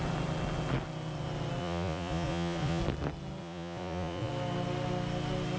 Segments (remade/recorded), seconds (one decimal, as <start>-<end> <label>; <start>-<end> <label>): 0.0-1.6 recorded; 1.6-2.8 remade; 2.8-3.4 recorded; 3.4-4.3 remade; 4.3-5.6 recorded